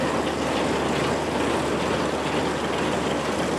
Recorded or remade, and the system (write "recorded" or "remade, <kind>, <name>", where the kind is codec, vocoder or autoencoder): recorded